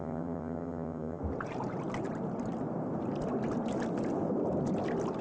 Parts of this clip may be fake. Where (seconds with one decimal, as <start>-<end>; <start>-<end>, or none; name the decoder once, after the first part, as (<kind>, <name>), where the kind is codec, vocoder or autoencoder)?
0.0-1.2 (vocoder, HiFi-GAN)